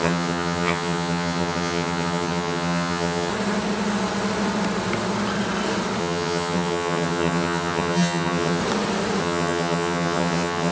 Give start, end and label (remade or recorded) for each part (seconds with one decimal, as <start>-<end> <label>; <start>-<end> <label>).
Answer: 0.0-3.3 remade; 3.3-6.0 recorded; 6.0-8.6 remade; 8.6-9.2 recorded; 9.2-10.7 remade